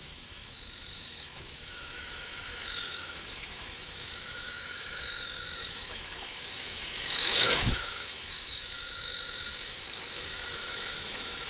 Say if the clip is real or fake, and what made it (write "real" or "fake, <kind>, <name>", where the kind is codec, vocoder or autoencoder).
fake, autoencoder, DAC-VAE